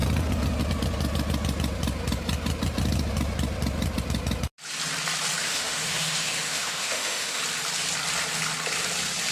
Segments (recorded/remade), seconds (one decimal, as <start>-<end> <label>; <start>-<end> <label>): 0.0-5.4 recorded; 5.4-7.4 remade; 7.4-9.3 recorded